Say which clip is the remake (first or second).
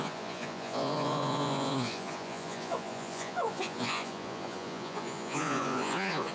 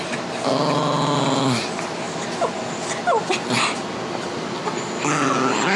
first